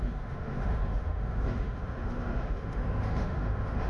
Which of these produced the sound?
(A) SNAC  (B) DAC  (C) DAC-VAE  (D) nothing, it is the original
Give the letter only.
C